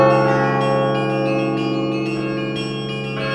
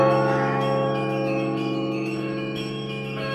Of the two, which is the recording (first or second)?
first